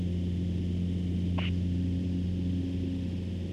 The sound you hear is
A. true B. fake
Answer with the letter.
A